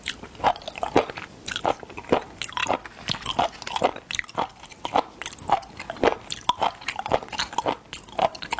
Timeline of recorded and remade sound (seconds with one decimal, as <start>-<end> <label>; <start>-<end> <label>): 0.0-8.6 recorded